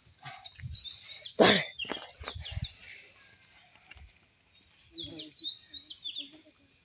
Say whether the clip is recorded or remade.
recorded